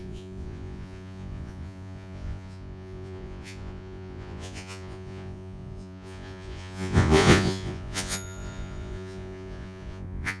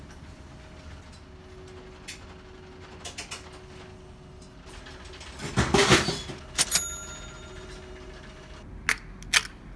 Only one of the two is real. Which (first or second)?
second